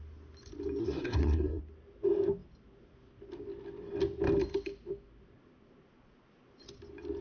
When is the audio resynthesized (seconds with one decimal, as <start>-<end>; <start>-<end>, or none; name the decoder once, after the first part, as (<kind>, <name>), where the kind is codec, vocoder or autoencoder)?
0.8-1.6 (codec, SNAC)